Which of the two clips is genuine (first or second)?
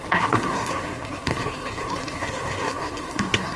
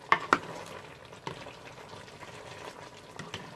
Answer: second